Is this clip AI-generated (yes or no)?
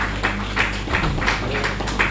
no